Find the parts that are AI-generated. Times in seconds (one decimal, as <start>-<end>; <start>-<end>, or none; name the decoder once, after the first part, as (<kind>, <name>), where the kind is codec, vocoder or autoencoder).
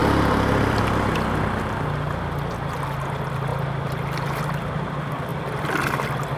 0.0-0.8 (vocoder, BigVGAN v2)